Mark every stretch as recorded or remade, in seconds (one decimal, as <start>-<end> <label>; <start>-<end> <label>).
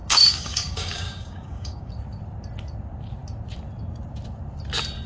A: 0.0-1.9 remade; 1.9-5.1 recorded